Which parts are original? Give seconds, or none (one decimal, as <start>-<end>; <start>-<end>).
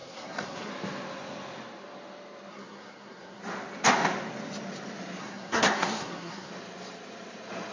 0.7-2.5; 3.4-5.2; 6.5-7.7